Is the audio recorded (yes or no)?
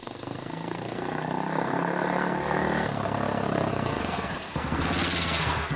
no